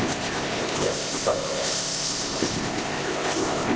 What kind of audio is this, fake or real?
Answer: fake